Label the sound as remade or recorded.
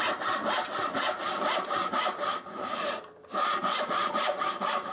recorded